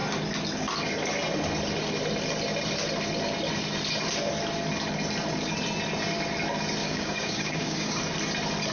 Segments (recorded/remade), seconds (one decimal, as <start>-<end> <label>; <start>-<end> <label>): 0.0-6.8 recorded; 6.8-8.0 remade; 8.0-8.7 recorded